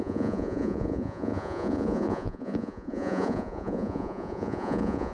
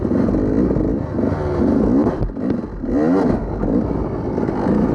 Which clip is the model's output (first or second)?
first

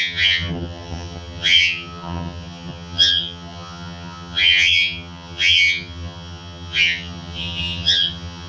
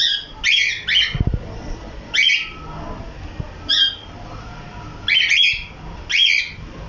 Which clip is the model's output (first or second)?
first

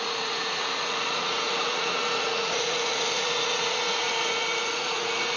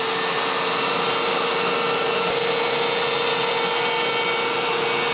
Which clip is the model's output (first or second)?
first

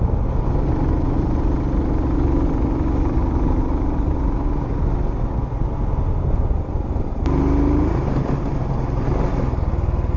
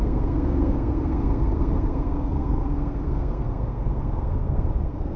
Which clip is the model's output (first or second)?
second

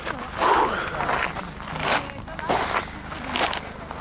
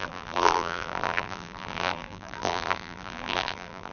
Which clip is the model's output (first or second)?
second